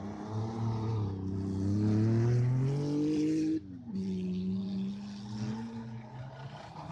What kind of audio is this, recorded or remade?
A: recorded